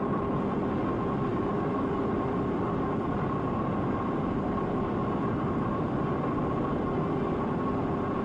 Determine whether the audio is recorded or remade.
remade